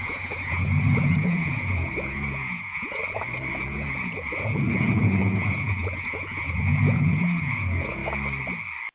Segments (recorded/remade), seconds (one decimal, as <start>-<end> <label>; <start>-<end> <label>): 0.0-3.0 remade; 3.0-3.5 recorded; 3.5-8.0 remade; 8.0-8.9 recorded